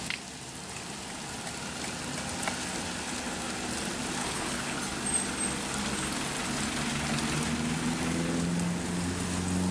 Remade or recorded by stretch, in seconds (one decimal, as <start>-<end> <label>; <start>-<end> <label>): 0.0-4.2 recorded; 4.2-4.8 remade; 4.8-9.7 recorded